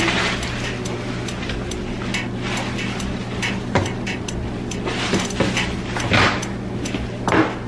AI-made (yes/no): no